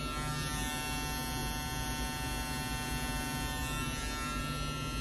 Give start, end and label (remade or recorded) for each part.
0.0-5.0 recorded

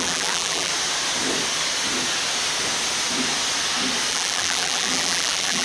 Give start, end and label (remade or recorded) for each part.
0.0-0.7 remade; 0.7-4.1 recorded; 4.1-5.6 remade

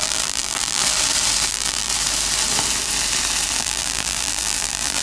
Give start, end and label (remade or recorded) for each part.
0.0-0.8 remade; 0.8-1.5 recorded; 1.5-1.9 remade; 1.9-3.6 recorded; 3.6-5.0 remade

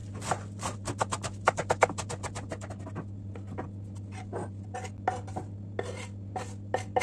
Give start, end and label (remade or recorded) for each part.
0.0-7.0 recorded

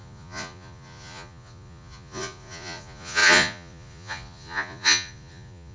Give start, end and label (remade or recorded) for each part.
0.0-5.7 remade